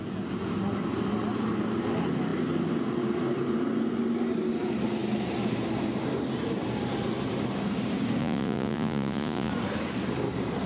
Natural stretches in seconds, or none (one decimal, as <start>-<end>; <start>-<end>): 0.0-8.2; 9.5-10.7